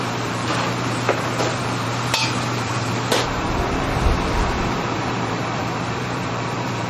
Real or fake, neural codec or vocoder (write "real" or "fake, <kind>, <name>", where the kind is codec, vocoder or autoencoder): fake, vocoder, BigVGAN v2